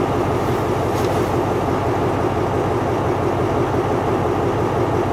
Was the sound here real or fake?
real